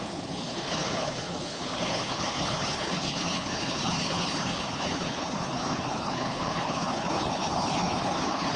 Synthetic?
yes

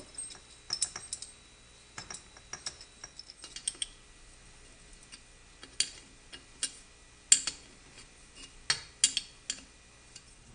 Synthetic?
no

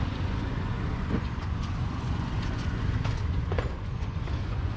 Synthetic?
yes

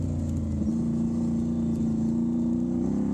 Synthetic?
no